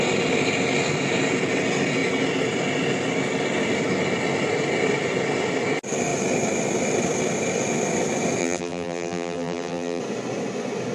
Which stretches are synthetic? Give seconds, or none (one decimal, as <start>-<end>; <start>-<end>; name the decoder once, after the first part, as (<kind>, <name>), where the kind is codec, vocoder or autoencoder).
8.4-10.0 (vocoder, BigVGAN v2)